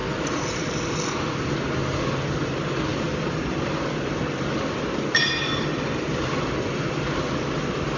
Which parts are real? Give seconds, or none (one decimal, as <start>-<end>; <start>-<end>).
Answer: 0.7-8.0